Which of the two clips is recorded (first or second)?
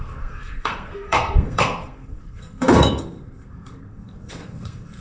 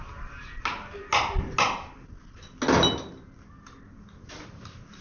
second